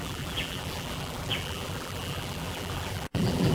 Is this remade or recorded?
remade